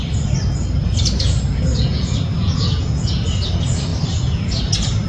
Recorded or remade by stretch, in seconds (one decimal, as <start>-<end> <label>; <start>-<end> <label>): 0.0-1.7 recorded; 1.7-3.1 remade; 3.1-5.1 recorded